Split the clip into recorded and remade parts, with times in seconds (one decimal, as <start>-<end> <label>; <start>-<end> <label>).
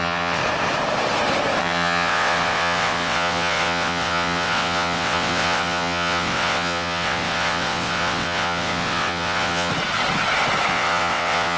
0.0-0.4 remade; 0.4-1.6 recorded; 1.6-9.7 remade; 9.7-10.7 recorded; 10.7-11.6 remade